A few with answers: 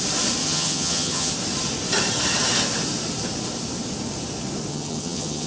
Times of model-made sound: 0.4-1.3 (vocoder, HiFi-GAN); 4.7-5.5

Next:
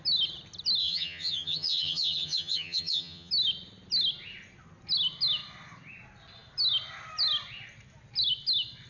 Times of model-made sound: 0.8-3.3 (vocoder, HiFi-GAN)

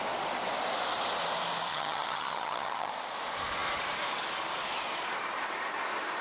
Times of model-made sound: 1.7-2.9 (vocoder, HiFi-GAN)

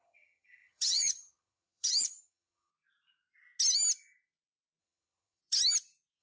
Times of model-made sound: 0.0-2.7 (vocoder, HiFi-GAN); 4.8-5.4

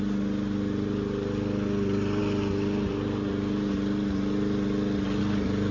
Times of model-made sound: none

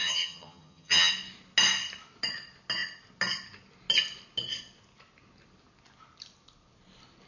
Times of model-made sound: 0.0-1.1 (vocoder, HiFi-GAN)